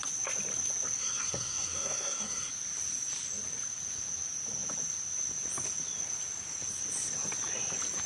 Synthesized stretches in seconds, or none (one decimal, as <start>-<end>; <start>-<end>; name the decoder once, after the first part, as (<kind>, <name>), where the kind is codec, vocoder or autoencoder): 1.0-2.5 (codec, SNAC)